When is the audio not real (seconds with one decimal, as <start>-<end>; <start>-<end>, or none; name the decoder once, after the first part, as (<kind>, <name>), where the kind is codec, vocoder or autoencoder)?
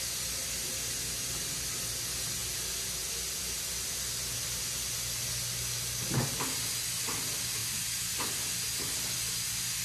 none